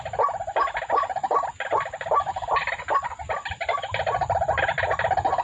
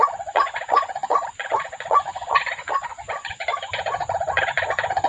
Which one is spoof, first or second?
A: second